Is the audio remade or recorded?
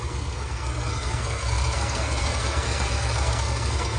remade